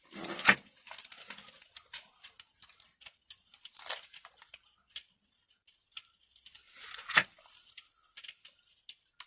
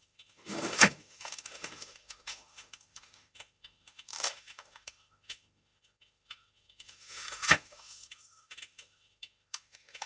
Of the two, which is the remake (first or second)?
second